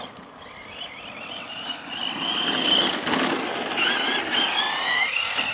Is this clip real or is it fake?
real